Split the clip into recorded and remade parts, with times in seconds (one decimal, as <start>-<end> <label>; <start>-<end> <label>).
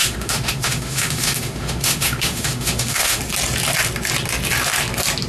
0.0-3.2 remade; 3.2-5.3 recorded